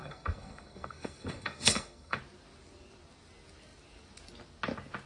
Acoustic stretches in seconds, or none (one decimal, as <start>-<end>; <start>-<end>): 2.2-5.1